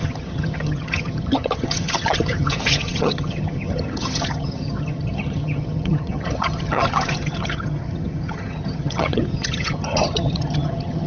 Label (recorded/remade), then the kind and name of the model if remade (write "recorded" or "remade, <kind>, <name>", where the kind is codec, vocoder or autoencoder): remade, vocoder, HiFi-GAN